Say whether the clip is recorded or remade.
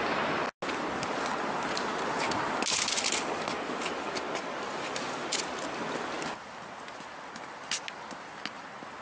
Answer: recorded